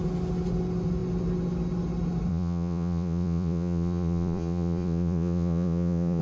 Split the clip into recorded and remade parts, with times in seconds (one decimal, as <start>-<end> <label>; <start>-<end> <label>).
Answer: 0.0-2.3 recorded; 2.3-6.2 remade